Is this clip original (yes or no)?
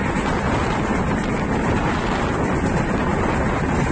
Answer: yes